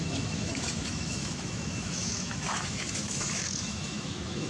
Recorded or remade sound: remade